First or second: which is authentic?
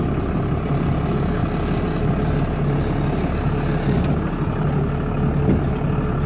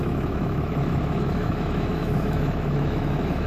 first